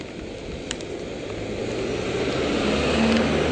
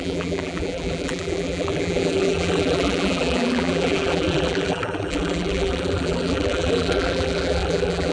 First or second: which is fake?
second